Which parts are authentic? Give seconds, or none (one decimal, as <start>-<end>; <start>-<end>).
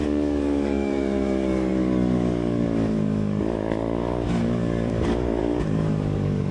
none